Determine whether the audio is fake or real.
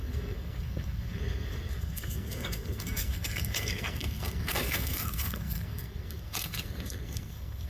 fake